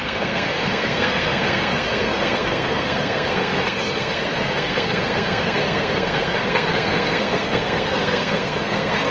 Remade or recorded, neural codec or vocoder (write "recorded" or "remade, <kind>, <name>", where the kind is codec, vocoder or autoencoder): remade, codec, SNAC